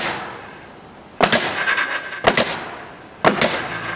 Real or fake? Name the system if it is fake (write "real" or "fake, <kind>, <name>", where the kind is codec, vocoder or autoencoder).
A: real